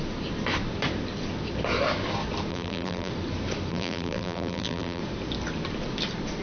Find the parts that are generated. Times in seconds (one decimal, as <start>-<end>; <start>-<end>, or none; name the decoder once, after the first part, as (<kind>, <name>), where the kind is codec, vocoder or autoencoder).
2.5-3.1 (vocoder, BigVGAN v2); 3.7-5.0